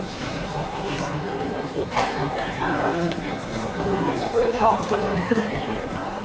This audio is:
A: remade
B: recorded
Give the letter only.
A